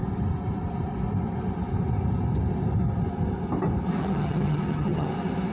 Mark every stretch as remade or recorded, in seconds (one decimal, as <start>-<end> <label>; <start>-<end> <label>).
0.0-4.0 recorded; 4.0-5.1 remade; 5.1-5.5 recorded